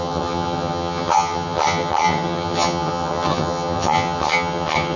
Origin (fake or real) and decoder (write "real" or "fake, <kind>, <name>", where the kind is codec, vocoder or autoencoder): fake, vocoder, HiFi-GAN